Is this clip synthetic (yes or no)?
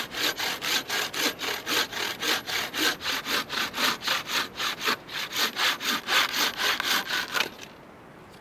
no